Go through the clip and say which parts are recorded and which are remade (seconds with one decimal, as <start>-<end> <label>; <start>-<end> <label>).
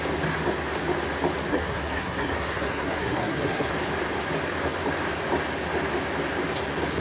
0.0-1.5 recorded; 1.5-3.7 remade; 3.7-7.0 recorded